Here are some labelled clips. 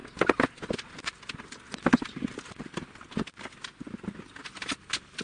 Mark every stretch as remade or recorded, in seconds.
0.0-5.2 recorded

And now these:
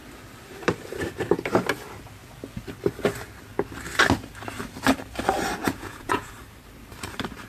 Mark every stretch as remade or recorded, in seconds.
0.0-5.6 recorded; 5.6-6.3 remade; 6.3-7.5 recorded